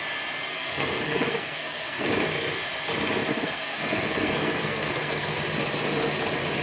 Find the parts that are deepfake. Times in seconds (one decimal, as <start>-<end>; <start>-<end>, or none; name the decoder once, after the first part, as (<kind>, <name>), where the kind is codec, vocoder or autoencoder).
0.5-2.1 (codec, SNAC); 3.3-5.4